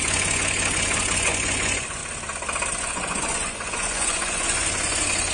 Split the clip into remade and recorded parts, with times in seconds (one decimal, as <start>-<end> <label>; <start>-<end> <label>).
0.0-2.0 remade; 2.0-2.8 recorded; 2.8-5.3 remade